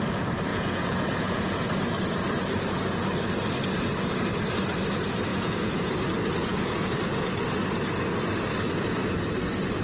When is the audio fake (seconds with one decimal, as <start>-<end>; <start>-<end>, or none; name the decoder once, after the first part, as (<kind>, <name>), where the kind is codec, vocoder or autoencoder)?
0.5-1.7 (vocoder, Vocos); 5.3-5.9; 6.5-7.0